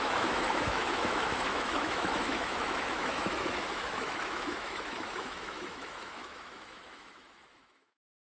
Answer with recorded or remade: remade